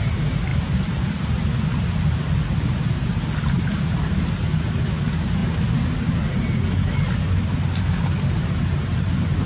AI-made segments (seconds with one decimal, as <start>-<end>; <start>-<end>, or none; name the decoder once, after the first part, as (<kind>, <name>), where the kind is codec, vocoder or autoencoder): none